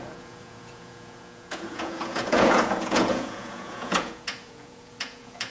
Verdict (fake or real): fake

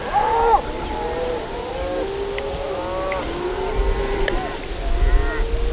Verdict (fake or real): real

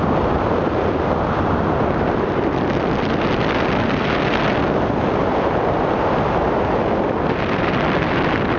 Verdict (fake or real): real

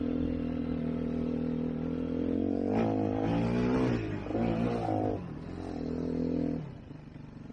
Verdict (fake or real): real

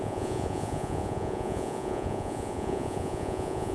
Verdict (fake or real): fake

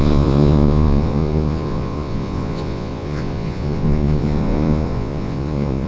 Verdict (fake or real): fake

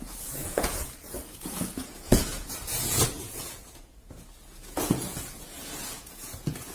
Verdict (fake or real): fake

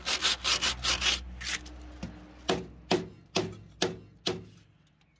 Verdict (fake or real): real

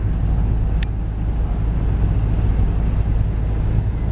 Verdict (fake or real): real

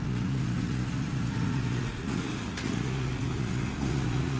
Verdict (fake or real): fake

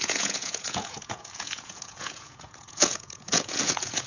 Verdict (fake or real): fake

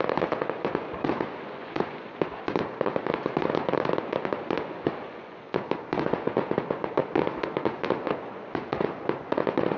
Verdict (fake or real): fake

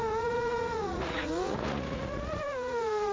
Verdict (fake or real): fake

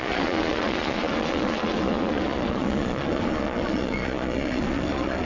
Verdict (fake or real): fake